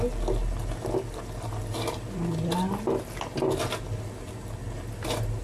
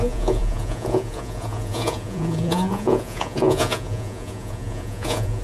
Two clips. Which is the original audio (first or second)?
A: first